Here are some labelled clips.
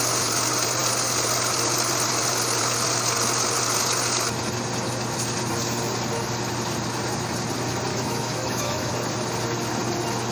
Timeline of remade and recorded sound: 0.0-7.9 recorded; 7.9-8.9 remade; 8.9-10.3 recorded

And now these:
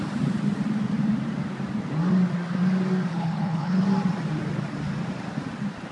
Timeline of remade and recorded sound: 0.0-3.1 recorded; 3.1-3.8 remade; 3.8-5.9 recorded